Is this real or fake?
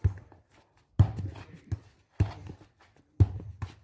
real